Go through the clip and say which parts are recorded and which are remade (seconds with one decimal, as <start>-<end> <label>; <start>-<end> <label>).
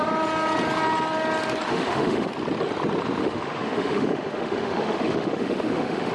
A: 0.0-1.7 recorded; 1.7-2.3 remade; 2.3-3.2 recorded; 3.2-6.1 remade